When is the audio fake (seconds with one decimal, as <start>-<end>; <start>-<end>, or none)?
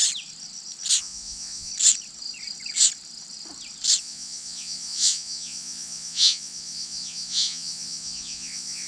1.0-1.7; 4.0-8.9